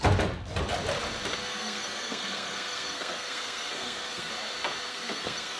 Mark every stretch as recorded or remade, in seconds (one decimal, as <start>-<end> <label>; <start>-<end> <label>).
0.0-1.4 recorded; 1.4-4.3 remade; 4.3-4.9 recorded; 4.9-5.6 remade